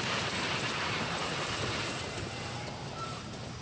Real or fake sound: real